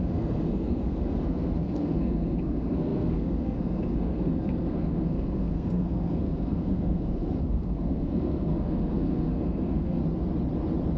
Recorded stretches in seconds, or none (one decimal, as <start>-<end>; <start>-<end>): 10.0-11.0